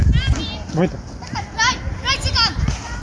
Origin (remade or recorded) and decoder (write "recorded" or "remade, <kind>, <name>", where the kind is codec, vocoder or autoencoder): recorded